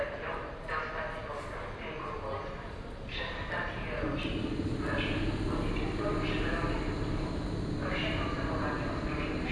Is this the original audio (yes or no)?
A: yes